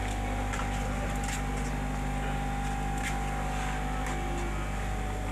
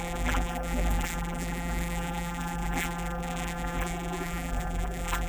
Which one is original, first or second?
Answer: first